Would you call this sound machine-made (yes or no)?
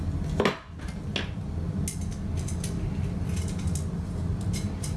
no